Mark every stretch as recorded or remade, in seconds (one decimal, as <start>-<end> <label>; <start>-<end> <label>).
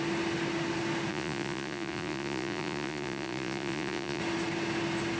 0.0-1.1 recorded; 1.1-4.2 remade; 4.2-5.2 recorded